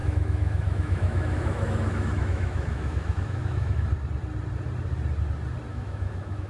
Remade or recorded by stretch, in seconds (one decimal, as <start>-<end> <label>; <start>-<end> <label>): 0.0-3.9 remade; 3.9-5.7 recorded; 5.7-6.5 remade

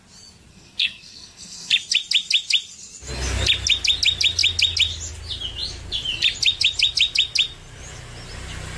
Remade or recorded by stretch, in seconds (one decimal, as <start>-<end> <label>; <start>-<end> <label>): 0.0-0.5 recorded; 0.5-1.7 remade; 1.7-8.8 recorded

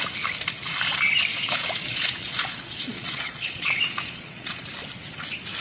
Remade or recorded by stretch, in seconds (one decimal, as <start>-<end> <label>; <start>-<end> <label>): 0.0-1.3 recorded; 1.3-4.6 remade; 4.6-5.6 recorded

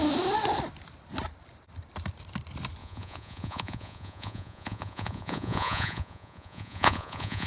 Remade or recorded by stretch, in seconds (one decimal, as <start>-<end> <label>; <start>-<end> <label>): 0.0-2.8 recorded; 2.8-7.5 remade

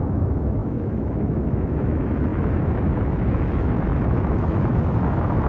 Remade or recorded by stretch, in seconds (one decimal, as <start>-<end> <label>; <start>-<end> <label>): 0.0-5.5 remade